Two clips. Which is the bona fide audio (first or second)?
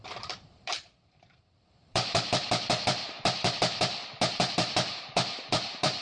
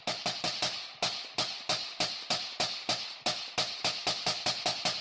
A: second